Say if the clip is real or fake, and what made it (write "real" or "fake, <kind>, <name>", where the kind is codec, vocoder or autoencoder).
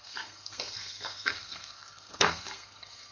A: fake, codec, SNAC